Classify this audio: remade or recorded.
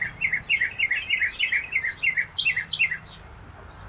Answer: recorded